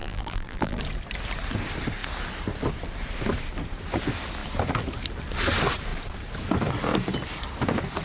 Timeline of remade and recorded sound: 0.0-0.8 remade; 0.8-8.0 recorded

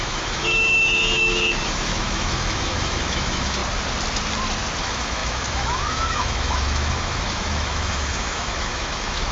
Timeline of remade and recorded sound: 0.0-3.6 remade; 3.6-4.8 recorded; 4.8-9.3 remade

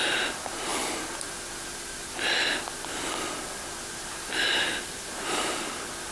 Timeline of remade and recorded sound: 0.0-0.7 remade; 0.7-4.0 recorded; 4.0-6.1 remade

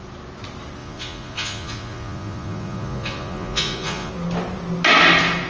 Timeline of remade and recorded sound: 0.0-0.8 recorded; 0.8-4.1 remade; 4.1-5.5 recorded